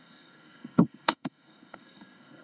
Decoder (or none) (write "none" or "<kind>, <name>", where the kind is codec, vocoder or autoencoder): codec, SNAC